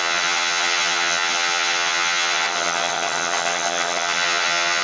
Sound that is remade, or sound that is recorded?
remade